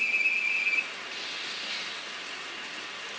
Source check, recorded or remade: recorded